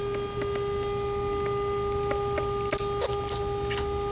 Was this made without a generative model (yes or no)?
yes